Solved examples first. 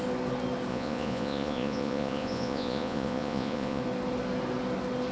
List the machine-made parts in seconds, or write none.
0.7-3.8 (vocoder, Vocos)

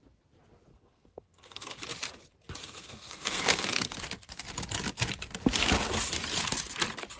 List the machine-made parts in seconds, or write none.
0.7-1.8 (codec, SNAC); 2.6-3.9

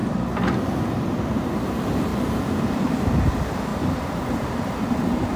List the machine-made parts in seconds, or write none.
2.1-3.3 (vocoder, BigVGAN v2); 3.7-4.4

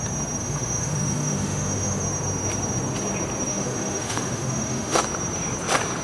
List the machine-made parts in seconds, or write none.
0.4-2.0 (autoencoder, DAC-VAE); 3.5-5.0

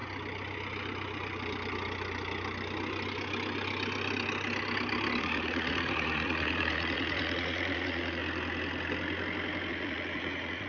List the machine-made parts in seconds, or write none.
5.2-8.2 (vocoder, Vocos); 9.7-10.7